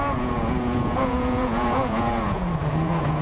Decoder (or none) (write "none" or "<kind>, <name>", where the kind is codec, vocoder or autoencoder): vocoder, Vocos